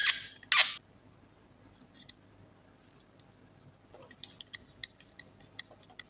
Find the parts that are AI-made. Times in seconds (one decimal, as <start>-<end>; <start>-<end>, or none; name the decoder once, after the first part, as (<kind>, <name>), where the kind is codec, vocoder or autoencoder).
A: none